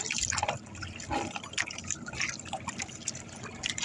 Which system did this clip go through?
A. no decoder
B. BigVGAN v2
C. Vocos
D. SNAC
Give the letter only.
A